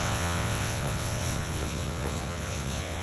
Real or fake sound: fake